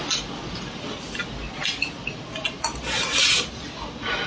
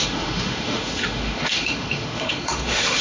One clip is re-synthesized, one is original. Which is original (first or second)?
first